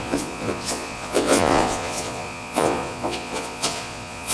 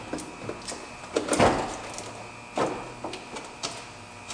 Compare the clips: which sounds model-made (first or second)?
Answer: first